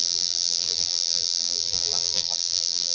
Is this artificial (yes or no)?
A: yes